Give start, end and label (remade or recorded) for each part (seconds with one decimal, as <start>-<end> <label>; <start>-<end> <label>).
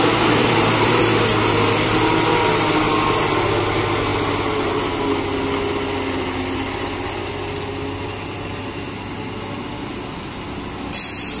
0.0-0.4 recorded; 0.4-1.0 remade; 1.0-11.4 recorded